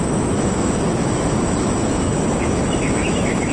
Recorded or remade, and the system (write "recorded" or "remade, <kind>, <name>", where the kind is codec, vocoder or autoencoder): remade, autoencoder, DAC-VAE